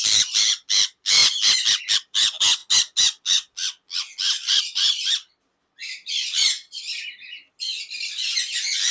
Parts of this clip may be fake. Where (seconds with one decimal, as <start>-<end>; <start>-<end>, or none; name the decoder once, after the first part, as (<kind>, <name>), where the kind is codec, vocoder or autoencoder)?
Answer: 0.0-1.2 (vocoder, BigVGAN v2); 1.8-2.6; 4.6-8.9